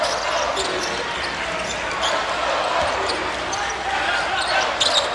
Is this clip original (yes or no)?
yes